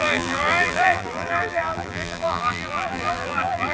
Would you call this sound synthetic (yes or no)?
yes